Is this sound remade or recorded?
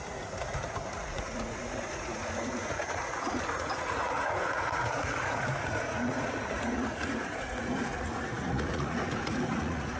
remade